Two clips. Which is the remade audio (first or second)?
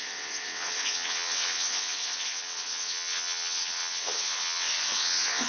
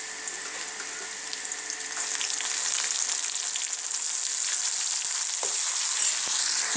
first